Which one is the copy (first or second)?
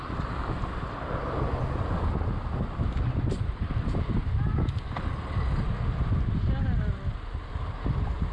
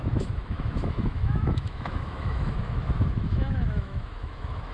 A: second